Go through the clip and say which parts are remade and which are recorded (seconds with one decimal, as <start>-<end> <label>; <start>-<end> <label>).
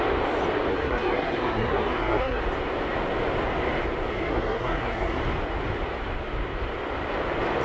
0.0-0.7 recorded; 0.7-2.4 remade; 2.4-4.1 recorded; 4.1-5.2 remade; 5.2-7.6 recorded